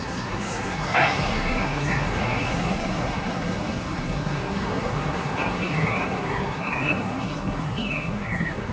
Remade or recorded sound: remade